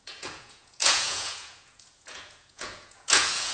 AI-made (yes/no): yes